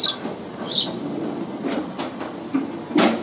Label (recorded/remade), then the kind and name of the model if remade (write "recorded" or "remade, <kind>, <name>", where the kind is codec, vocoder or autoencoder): recorded